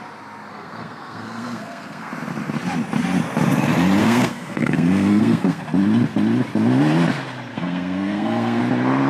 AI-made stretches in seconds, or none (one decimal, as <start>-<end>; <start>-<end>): 0.5-2.1; 4.0-5.6; 7.5-8.6